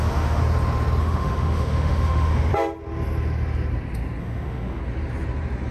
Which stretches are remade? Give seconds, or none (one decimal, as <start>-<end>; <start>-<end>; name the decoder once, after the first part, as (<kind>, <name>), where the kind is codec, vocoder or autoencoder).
0.0-0.4 (autoencoder, DAC-VAE); 1.0-2.5; 4.2-4.8